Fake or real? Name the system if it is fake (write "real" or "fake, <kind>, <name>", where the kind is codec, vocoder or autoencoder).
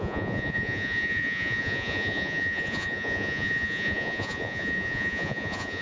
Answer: fake, vocoder, Vocos